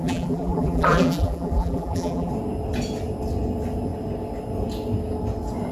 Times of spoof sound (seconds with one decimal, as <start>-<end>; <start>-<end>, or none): 0.0-2.3